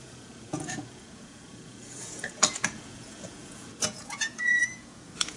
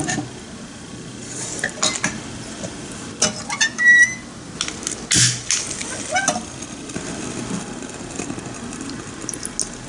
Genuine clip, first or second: second